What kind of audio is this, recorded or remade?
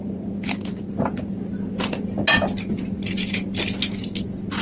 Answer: recorded